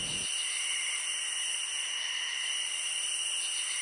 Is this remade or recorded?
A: remade